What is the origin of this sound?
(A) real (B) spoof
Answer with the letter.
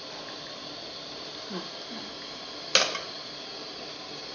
A